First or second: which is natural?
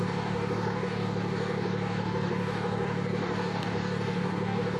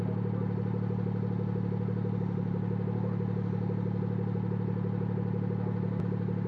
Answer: second